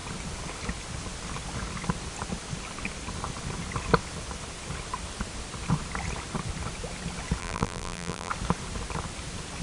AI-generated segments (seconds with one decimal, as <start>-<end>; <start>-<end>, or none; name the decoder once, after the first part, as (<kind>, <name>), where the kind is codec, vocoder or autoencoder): 7.4-8.3 (vocoder, BigVGAN v2)